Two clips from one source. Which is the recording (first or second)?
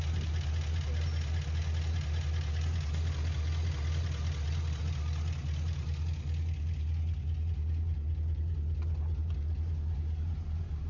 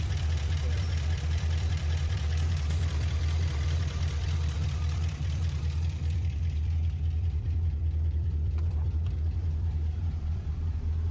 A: first